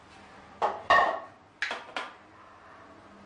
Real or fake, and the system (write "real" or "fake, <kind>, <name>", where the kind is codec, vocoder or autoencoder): real